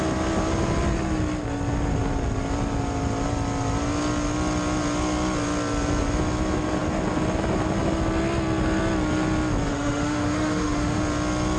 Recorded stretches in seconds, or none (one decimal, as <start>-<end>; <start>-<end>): 0.0-9.7; 11.0-11.6